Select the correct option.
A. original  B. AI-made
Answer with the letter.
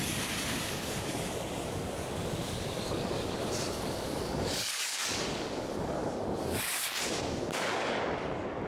B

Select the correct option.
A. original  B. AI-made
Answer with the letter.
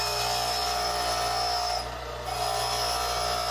A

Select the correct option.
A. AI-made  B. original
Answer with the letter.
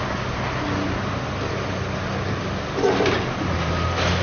B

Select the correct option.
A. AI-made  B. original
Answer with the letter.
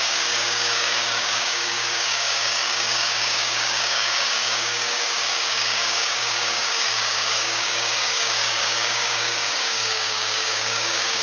A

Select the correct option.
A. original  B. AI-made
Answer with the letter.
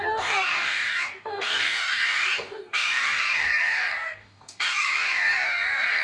B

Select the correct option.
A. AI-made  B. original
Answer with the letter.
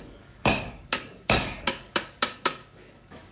A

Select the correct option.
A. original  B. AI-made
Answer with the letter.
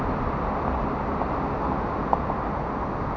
A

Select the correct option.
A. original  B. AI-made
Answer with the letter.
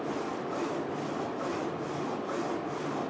A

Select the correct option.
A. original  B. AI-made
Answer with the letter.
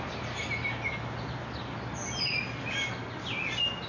A